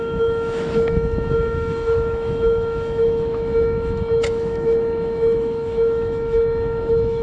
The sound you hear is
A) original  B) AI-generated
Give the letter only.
B